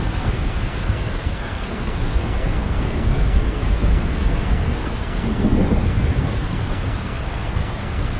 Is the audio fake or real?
fake